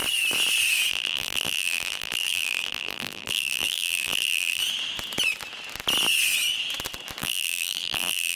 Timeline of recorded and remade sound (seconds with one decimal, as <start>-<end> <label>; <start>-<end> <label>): 0.0-0.9 recorded; 0.9-4.6 remade; 4.6-7.2 recorded; 7.2-8.4 remade